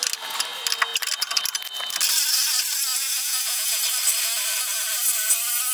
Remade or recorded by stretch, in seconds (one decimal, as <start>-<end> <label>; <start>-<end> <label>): 0.0-2.9 recorded; 2.9-3.8 remade; 3.8-5.7 recorded